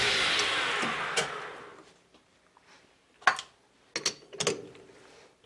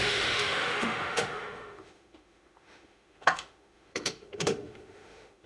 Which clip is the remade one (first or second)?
second